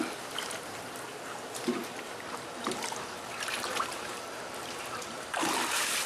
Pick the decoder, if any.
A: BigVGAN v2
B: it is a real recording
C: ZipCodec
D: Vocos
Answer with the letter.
A